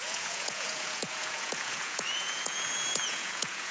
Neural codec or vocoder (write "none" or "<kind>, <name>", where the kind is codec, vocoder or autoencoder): vocoder, Vocos